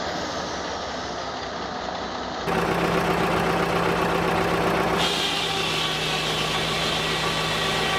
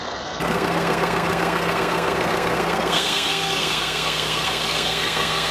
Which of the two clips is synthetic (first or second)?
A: second